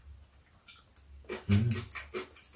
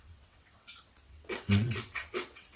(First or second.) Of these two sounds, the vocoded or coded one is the second